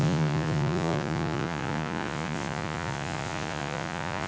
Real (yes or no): no